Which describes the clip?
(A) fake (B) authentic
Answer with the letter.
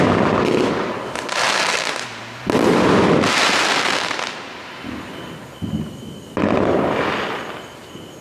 B